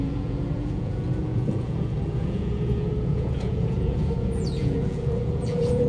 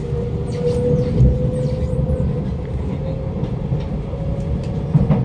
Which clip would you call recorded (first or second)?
second